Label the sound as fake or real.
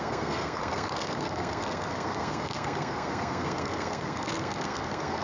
fake